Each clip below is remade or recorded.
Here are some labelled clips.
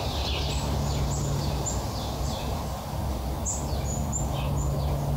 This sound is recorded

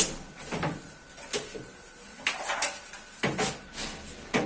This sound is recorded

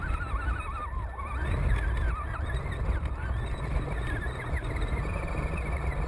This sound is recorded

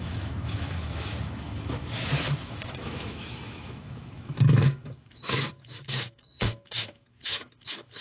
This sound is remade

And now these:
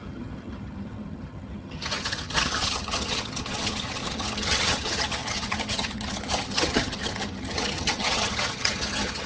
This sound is remade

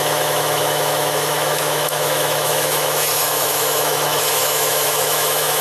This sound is remade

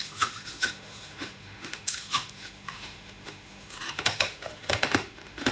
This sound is remade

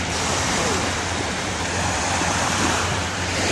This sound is remade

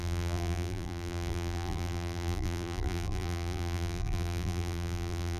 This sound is remade